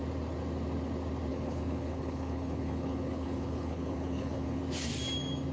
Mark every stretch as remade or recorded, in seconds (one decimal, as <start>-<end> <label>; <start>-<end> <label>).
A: 0.0-1.3 recorded; 1.3-4.6 remade; 4.6-5.5 recorded